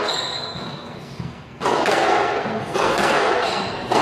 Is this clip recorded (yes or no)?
no